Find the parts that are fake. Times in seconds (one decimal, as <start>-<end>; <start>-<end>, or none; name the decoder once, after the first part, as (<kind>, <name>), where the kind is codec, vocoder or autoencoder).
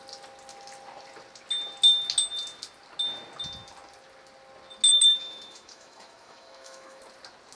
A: 4.9-7.0 (autoencoder, DAC-VAE)